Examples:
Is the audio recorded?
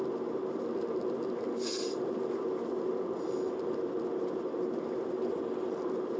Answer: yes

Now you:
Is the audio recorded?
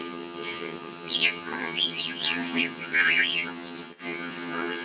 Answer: no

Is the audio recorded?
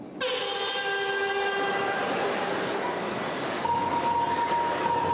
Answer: yes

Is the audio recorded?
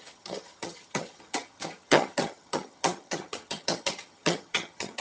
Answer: no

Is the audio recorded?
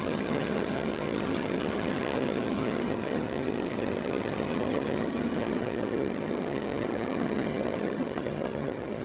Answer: no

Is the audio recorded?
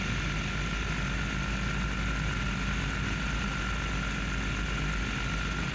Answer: yes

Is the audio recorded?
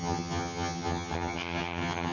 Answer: no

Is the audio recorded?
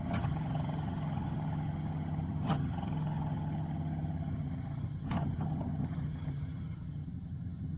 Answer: no